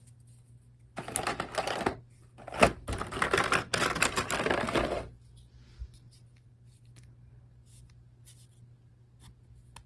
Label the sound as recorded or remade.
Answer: recorded